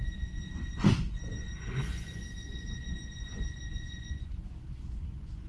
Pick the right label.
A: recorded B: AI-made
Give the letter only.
B